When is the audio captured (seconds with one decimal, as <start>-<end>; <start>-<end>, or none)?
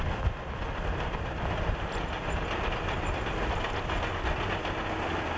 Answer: 0.0-5.4